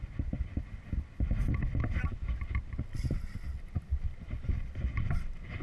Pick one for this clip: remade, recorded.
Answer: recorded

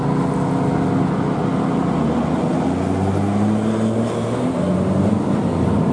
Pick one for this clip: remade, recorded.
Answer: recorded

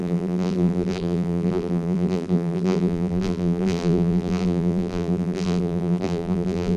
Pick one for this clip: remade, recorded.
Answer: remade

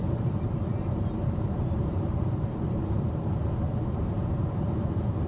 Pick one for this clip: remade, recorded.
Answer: remade